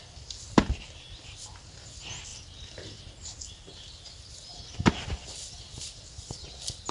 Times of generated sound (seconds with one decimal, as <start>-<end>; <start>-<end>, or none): none